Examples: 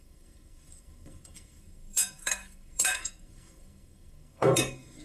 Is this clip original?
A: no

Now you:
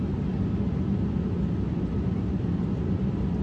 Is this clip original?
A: yes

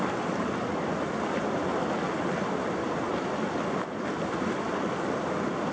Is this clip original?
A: yes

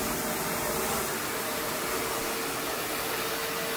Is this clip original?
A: yes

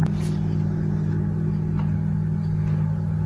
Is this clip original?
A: yes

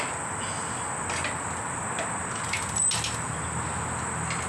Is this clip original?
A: yes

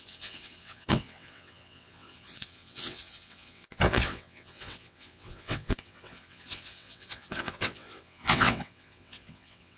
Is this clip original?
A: no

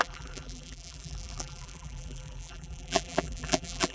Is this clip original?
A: no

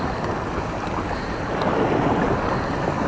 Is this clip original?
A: yes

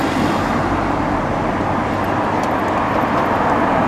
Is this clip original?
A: yes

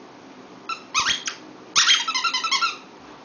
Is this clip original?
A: yes